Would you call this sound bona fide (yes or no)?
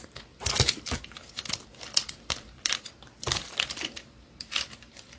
no